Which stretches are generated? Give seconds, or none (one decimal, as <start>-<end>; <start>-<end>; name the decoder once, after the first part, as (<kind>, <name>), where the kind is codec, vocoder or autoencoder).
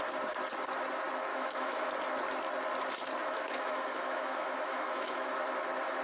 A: 1.3-1.9 (autoencoder, DAC-VAE); 3.2-5.3